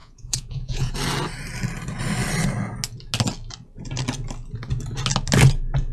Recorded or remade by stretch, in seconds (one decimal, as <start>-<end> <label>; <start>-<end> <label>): 0.0-0.9 remade; 0.9-5.9 recorded